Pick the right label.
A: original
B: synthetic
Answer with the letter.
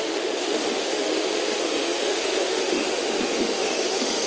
B